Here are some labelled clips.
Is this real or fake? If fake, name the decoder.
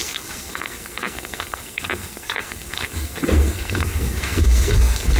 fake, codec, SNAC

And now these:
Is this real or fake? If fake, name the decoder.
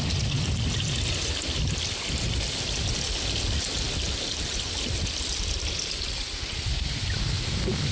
real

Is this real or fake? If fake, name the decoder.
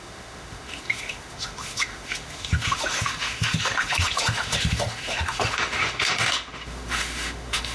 fake, autoencoder, DAC-VAE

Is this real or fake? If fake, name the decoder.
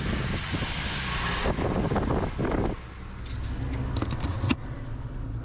real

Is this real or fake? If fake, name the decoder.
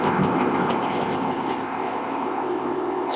fake, codec, ZipCodec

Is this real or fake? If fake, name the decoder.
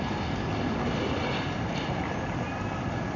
real